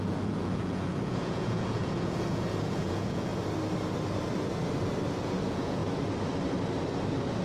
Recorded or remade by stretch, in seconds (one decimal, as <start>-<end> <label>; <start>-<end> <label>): 0.0-3.3 remade; 3.3-5.2 recorded; 5.2-5.8 remade; 5.8-7.4 recorded

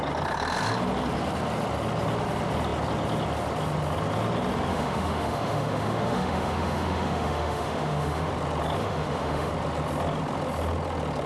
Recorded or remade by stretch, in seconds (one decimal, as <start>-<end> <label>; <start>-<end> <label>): 0.0-4.7 recorded; 4.7-8.3 remade; 8.3-8.8 recorded; 8.8-9.5 remade; 9.5-11.3 recorded